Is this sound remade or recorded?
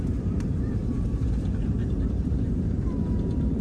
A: remade